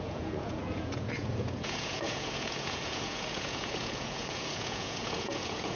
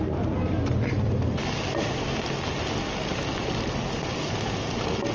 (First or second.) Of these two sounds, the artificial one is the first